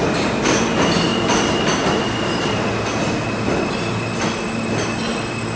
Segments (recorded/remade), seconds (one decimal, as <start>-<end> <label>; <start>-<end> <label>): 0.0-5.6 recorded